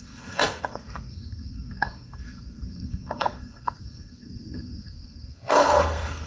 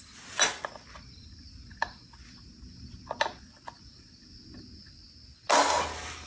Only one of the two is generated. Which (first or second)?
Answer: first